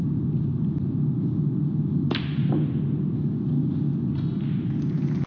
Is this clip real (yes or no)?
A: yes